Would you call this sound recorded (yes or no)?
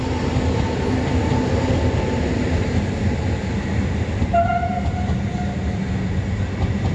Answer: yes